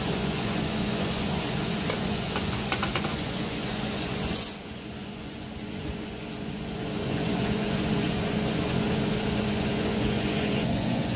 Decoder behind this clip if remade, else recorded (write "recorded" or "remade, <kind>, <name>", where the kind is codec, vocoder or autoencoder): remade, vocoder, Vocos